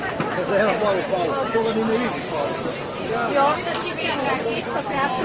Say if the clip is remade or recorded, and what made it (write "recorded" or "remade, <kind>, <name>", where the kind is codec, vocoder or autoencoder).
recorded